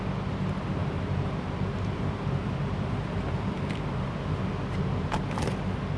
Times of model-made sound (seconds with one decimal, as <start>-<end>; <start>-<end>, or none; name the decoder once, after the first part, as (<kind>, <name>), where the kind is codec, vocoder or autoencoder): 0.8-4.4 (vocoder, BigVGAN v2)